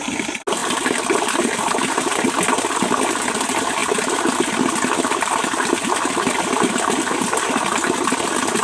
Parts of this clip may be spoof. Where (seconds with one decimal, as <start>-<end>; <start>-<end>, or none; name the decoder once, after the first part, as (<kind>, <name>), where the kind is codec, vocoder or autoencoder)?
none